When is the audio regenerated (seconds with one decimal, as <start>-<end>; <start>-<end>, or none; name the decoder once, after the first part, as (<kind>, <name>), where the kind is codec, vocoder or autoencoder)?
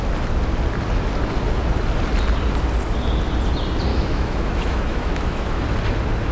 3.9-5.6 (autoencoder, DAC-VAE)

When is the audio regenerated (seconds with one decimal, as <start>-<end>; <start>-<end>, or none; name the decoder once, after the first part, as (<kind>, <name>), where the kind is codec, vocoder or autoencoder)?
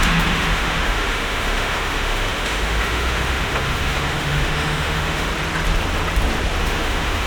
0.0-5.3 (autoencoder, DAC-VAE); 6.6-7.3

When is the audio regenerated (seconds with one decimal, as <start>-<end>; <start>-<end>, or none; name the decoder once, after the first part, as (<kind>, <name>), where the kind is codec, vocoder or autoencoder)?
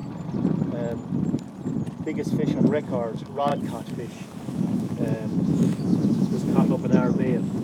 2.6-3.5 (autoencoder, DAC-VAE); 4.5-7.6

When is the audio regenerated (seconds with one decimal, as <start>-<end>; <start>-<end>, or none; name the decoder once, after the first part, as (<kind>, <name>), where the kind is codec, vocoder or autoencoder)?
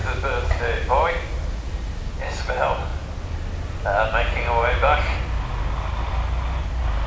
none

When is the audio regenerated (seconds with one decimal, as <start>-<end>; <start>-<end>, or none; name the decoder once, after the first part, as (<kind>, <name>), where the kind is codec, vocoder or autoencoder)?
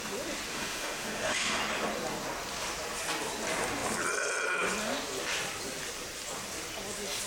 0.5-1.6 (autoencoder, DAC-VAE)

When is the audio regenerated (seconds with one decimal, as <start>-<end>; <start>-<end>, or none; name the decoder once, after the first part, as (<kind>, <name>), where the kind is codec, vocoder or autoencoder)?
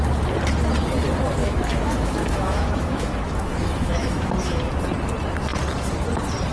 1.4-4.7 (autoencoder, DAC-VAE)